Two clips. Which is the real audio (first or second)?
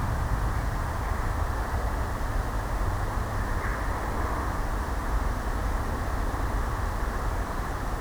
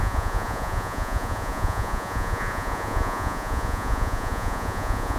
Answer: first